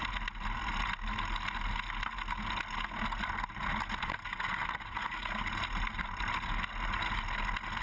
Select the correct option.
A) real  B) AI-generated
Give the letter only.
A